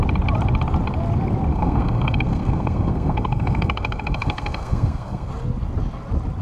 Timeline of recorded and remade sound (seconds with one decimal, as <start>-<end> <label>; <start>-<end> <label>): 0.0-1.5 recorded; 1.5-5.3 remade; 5.3-6.4 recorded